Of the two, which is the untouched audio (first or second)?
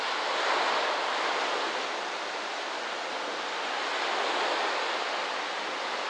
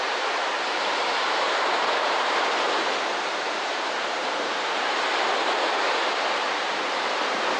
first